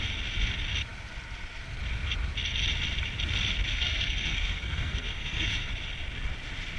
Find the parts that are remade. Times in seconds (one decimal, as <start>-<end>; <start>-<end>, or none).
3.7-5.7